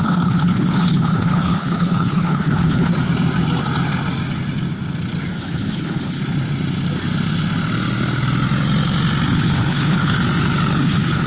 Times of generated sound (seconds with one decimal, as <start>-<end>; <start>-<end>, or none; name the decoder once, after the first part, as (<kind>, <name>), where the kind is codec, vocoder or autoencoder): 0.0-2.9 (codec, HILCodec); 5.3-6.2; 9.3-10.2; 10.8-11.3

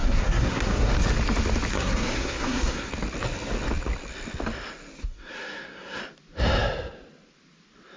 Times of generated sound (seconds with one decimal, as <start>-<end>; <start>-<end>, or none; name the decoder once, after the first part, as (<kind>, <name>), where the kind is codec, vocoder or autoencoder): 0.0-0.9 (codec, SNAC); 1.7-2.9; 5.0-6.0

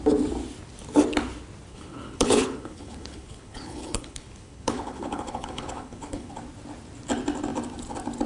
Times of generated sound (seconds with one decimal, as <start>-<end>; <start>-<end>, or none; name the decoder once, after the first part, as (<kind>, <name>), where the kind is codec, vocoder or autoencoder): 1.7-6.3 (codec, HILCodec)